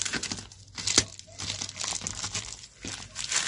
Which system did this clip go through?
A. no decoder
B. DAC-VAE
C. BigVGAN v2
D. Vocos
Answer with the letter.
A